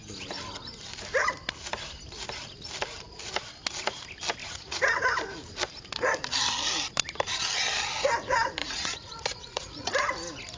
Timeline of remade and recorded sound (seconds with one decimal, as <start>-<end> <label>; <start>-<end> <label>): 0.0-4.4 recorded; 4.4-5.0 remade; 5.0-8.6 recorded; 8.6-9.9 remade; 9.9-10.6 recorded